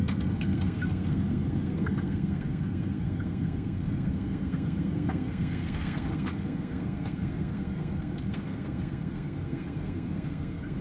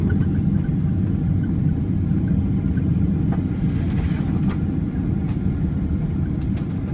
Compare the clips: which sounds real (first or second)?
second